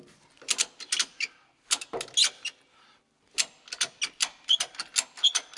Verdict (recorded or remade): recorded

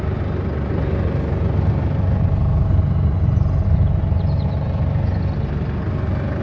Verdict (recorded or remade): recorded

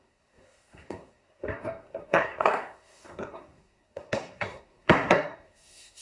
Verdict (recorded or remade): remade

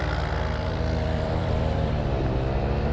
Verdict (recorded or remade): remade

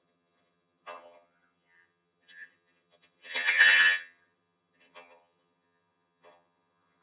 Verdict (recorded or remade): remade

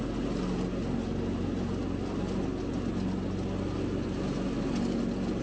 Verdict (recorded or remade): recorded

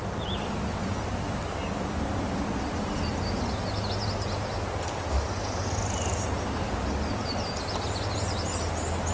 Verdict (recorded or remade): recorded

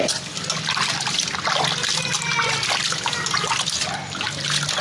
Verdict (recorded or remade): recorded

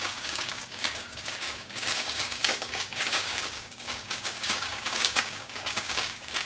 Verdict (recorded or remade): remade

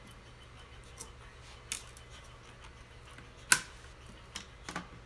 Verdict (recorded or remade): recorded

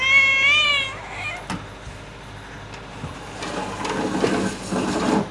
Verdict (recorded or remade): recorded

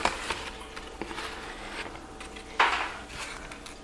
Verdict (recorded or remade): recorded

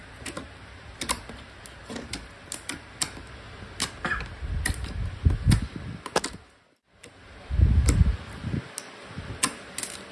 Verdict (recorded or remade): recorded